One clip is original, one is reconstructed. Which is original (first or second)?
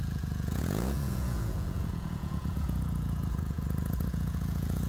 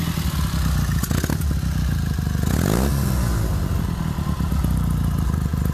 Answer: second